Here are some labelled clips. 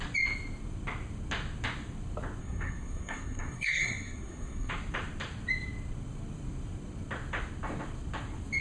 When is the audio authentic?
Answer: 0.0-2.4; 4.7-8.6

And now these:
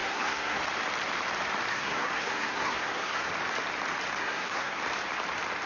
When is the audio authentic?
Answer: 0.6-1.7; 3.3-4.2; 4.8-5.7

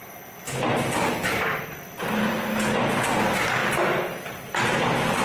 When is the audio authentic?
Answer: 0.0-5.2

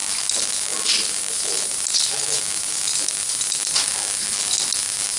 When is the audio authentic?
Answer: 0.0-5.2